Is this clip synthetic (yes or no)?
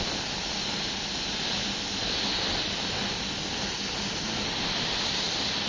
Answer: no